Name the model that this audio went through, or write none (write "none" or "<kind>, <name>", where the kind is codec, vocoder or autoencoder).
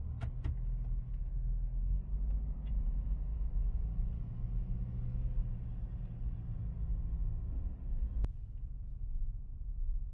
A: none